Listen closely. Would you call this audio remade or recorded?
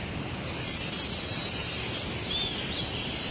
recorded